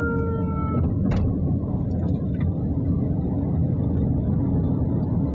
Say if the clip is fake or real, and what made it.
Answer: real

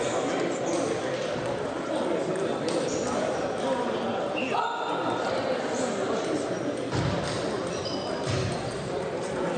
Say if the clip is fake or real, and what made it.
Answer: real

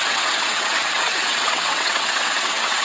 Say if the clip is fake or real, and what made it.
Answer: fake, vocoder, WaveNeXt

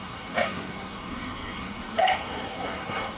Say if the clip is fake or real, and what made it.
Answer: fake, codec, SNAC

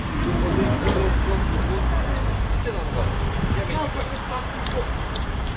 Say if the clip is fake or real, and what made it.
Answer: real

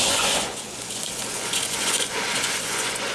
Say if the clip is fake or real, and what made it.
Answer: fake, vocoder, Vocos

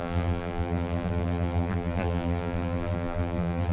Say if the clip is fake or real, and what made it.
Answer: fake, vocoder, BigVGAN v2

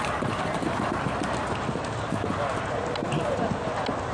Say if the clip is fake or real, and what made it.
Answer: real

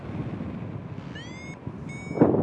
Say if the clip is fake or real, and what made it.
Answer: real